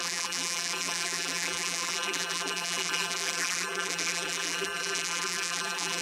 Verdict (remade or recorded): remade